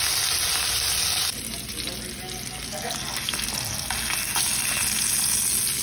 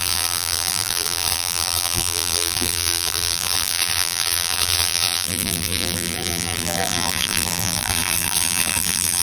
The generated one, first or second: second